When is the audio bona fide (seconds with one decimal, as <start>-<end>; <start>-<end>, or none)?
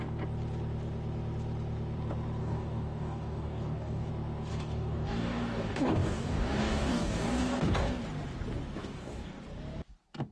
0.0-2.4; 4.1-4.5; 8.0-8.8; 9.4-10.3